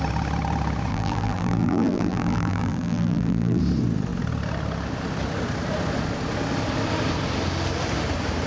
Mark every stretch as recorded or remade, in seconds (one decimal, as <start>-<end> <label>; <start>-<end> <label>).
0.0-0.9 recorded; 0.9-3.6 remade; 3.6-8.5 recorded